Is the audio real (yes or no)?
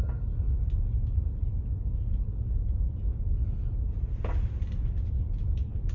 yes